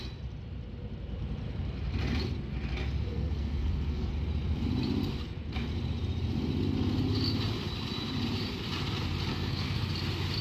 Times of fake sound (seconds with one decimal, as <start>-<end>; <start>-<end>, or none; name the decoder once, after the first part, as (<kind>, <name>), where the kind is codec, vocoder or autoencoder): 3.1-4.1 (codec, SNAC); 9.3-9.9